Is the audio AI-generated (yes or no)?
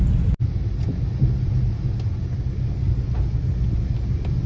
no